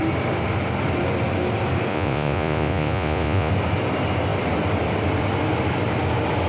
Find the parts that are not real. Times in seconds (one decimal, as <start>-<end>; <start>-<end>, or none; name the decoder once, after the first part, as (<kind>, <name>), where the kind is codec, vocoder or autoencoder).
1.9-3.5 (vocoder, Vocos)